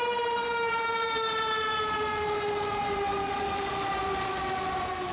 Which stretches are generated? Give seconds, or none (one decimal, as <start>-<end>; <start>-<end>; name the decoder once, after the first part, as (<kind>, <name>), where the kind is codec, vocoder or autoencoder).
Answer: 0.0-1.7 (vocoder, BigVGAN v2)